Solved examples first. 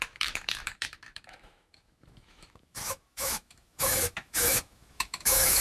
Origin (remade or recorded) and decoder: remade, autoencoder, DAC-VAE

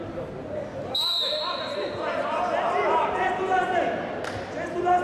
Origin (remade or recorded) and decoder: recorded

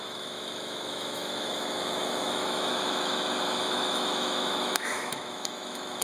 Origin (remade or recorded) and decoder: remade, autoencoder, DAC-VAE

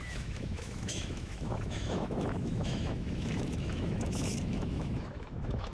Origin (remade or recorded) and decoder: remade, autoencoder, DAC-VAE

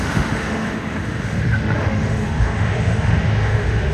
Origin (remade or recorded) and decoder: remade, autoencoder, DAC-VAE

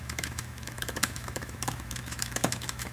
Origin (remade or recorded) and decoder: remade, autoencoder, DAC-VAE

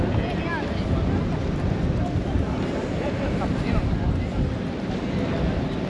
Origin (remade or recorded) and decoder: recorded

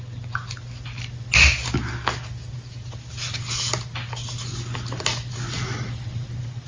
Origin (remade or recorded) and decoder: recorded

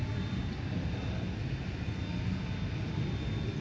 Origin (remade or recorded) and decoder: recorded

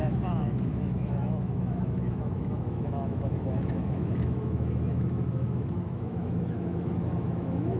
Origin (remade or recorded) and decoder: remade, autoencoder, DAC-VAE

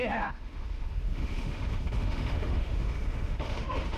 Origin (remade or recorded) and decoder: remade, autoencoder, DAC-VAE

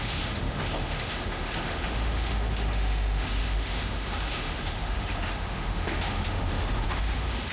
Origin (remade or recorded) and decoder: remade, autoencoder, DAC-VAE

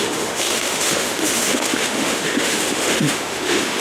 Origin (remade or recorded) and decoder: remade, autoencoder, DAC-VAE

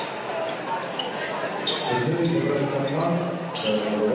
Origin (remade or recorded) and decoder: recorded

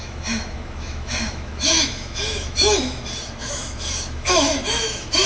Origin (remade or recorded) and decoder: remade, autoencoder, DAC-VAE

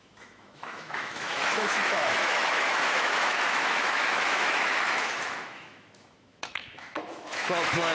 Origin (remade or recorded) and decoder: remade, autoencoder, DAC-VAE